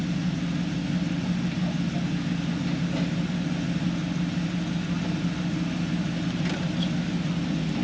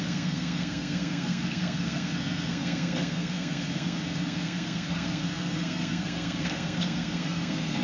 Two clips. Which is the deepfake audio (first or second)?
second